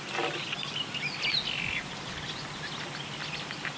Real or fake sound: real